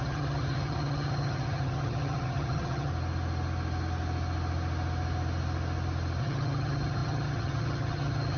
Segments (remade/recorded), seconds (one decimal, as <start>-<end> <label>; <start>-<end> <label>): 0.0-2.9 remade; 2.9-6.2 recorded; 6.2-8.4 remade